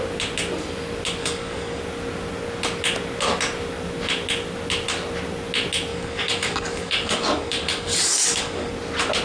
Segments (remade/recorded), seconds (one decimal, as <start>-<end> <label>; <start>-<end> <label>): 0.0-1.2 recorded; 1.2-1.8 remade; 1.8-5.9 recorded; 5.9-8.7 remade; 8.7-9.2 recorded